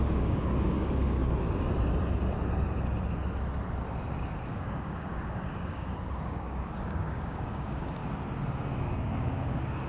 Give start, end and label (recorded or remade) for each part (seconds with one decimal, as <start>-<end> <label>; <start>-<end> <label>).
0.0-1.2 remade; 1.2-4.5 recorded; 4.5-8.0 remade; 8.0-8.8 recorded; 8.8-9.9 remade